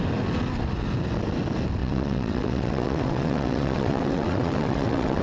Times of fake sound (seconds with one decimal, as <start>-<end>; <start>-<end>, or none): 1.8-5.2